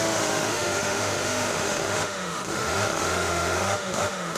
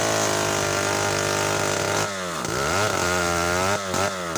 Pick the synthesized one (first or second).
first